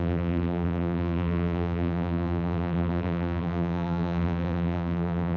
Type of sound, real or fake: fake